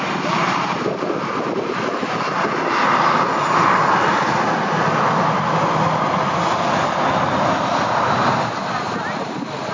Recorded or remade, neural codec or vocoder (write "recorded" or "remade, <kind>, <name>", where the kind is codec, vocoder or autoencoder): recorded